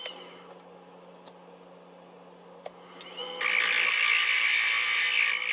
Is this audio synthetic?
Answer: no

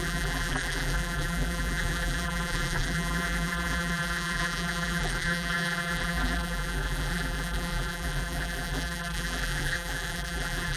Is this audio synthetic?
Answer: yes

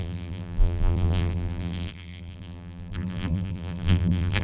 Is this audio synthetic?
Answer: yes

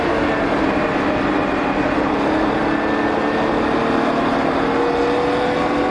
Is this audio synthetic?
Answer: no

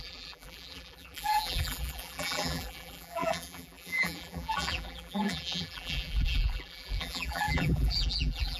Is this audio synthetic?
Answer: yes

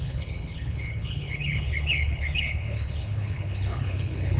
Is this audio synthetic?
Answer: yes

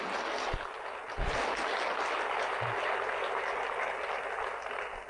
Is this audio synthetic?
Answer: no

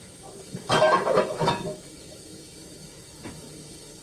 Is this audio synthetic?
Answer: yes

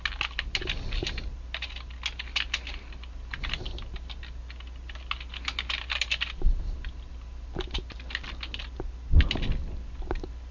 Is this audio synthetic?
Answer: no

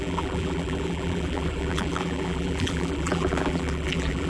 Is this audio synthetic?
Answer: yes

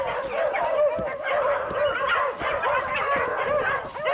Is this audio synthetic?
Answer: no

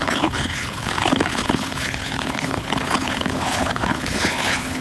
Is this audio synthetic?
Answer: yes